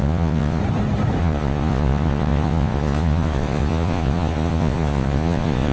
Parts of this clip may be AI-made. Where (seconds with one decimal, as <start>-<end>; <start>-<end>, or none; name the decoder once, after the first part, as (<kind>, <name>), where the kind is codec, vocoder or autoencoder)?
0.0-0.6 (vocoder, Vocos); 1.2-5.7